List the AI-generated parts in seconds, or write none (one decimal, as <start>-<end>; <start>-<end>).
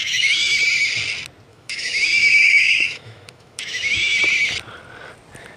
0.0-0.6; 1.5-4.2